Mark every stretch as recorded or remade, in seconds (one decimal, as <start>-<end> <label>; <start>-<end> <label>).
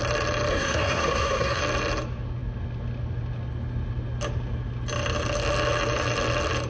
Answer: 0.0-0.5 recorded; 0.5-1.6 remade; 1.6-6.7 recorded